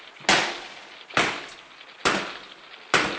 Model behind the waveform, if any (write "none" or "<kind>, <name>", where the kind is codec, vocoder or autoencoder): none